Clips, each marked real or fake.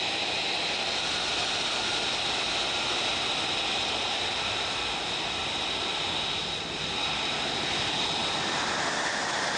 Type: real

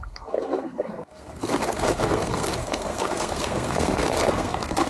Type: fake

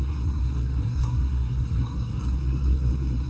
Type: fake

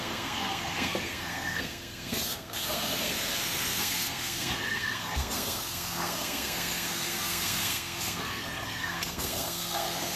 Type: fake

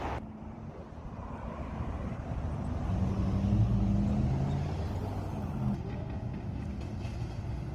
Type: real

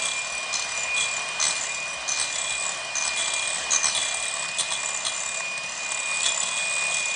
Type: real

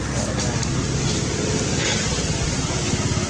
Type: real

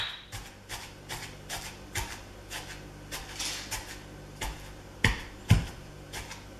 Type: real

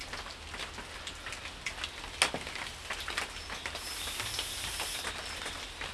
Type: real